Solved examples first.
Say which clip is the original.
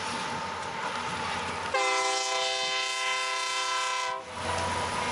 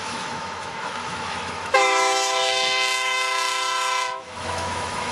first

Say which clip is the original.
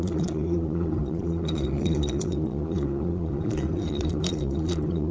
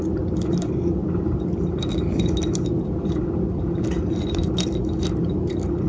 second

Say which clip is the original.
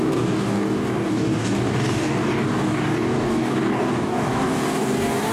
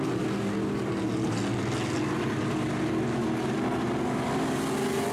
second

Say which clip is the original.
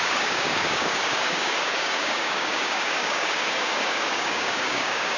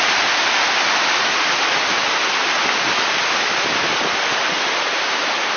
second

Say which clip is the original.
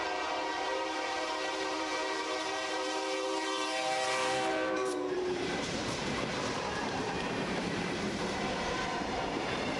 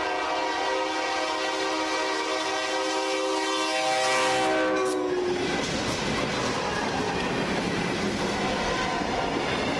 second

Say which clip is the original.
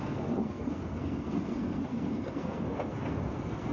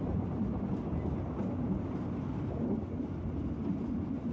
second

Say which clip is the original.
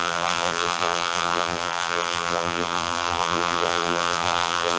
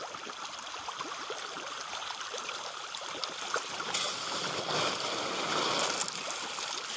second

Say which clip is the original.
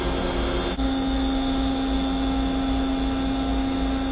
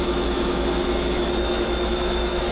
first